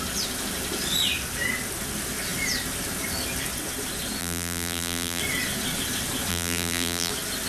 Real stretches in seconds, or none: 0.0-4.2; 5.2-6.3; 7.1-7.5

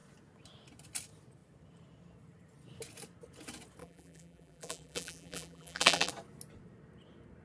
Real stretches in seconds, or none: 0.0-3.8; 6.1-7.4